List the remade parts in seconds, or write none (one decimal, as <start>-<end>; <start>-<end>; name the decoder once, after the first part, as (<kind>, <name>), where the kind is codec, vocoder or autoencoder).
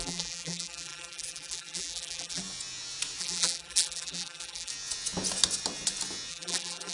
0.0-2.4 (vocoder, BigVGAN v2); 3.2-4.7; 6.3-6.9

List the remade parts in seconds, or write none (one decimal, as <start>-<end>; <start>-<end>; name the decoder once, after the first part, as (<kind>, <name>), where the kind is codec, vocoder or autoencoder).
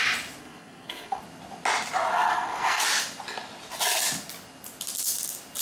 0.4-1.2 (codec, SNAC); 2.1-2.8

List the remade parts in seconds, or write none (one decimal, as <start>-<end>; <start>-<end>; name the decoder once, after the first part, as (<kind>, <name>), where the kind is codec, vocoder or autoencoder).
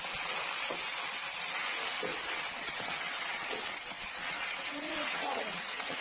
2.1-6.0 (vocoder, WaveNeXt)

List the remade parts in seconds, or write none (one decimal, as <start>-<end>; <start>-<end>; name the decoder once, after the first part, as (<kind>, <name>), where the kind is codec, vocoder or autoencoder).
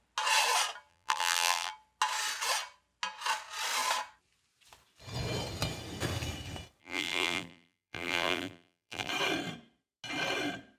0.9-1.7 (vocoder, BigVGAN v2); 6.8-9.1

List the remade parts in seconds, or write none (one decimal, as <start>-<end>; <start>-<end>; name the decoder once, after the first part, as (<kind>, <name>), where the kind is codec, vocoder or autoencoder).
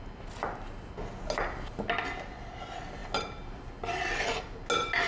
none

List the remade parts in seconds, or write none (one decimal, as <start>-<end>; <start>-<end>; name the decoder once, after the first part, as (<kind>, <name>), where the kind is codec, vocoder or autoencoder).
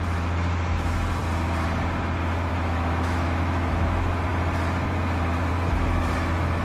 0.0-1.2 (autoencoder, DAC-VAE); 2.5-4.3; 5.5-6.6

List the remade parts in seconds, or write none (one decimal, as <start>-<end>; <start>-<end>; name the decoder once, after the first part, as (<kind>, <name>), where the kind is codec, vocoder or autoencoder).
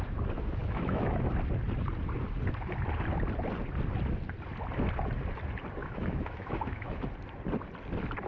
0.6-1.3 (autoencoder, DAC-VAE); 5.8-7.0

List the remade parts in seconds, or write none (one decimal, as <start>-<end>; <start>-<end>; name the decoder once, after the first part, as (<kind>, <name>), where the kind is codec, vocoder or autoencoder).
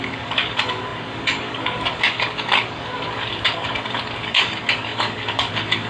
0.0-5.9 (codec, DAC)